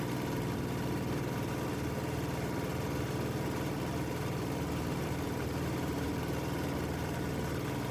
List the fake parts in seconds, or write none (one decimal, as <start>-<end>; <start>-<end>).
0.0-7.9